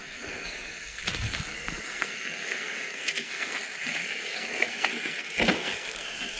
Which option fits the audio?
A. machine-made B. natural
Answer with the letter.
A